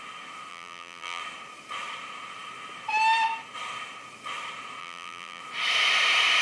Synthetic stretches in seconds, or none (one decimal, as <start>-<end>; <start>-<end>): 0.5-1.2; 4.8-5.4